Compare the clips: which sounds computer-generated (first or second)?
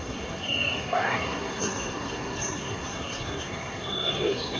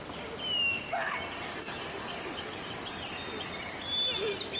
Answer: first